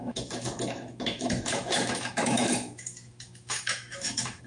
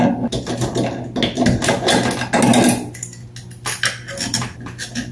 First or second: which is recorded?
second